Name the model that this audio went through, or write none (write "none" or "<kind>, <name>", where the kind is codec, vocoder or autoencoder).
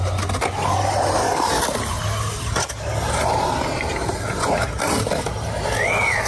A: none